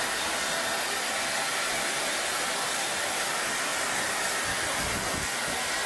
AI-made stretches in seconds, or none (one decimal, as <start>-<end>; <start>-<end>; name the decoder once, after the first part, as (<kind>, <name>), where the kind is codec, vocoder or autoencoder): none